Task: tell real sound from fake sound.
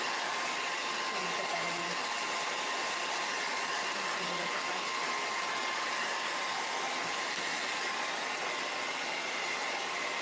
real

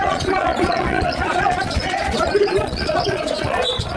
fake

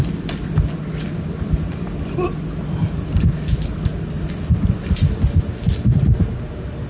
real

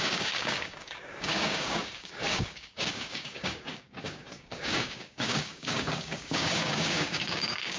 fake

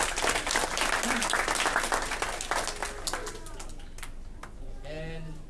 real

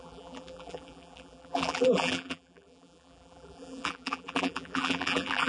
fake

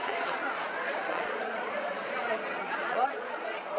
fake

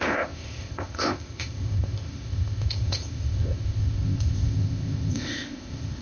fake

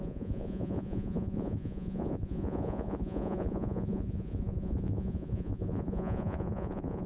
fake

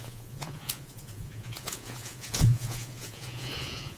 fake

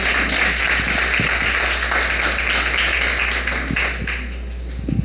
real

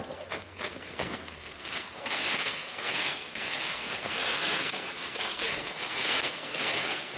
fake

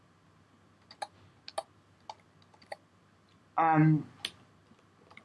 real